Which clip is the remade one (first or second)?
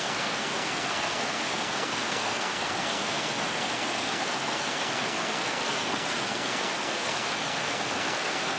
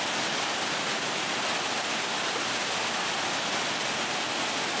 first